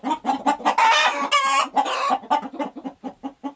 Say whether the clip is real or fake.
real